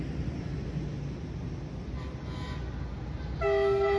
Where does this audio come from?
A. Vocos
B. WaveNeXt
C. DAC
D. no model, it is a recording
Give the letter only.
D